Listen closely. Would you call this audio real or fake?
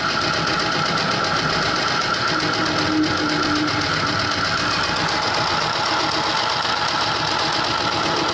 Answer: real